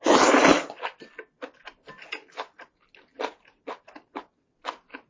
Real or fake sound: real